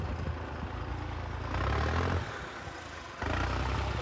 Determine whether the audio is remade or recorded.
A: recorded